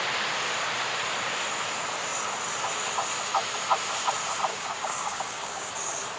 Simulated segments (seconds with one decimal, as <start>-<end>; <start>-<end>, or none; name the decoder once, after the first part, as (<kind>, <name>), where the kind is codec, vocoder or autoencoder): 4.5-5.7 (codec, DAC)

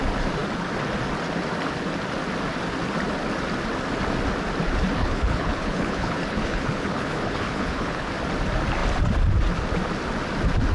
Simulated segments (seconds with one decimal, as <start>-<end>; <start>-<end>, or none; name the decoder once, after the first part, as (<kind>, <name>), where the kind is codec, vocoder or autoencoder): 5.0-8.1 (codec, HILCodec)

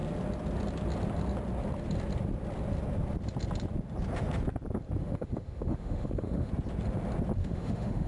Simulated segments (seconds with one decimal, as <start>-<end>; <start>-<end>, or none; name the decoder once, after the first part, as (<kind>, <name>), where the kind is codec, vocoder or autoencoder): 5.0-6.5 (autoencoder, DAC-VAE); 7.4-8.1